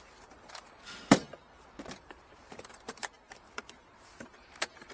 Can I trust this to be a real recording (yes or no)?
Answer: no